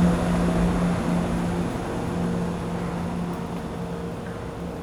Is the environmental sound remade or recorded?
recorded